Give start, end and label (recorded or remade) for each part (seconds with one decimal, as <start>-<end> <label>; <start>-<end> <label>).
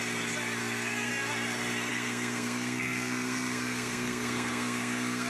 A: 0.0-0.6 recorded; 0.6-1.1 remade; 1.1-1.9 recorded; 1.9-5.3 remade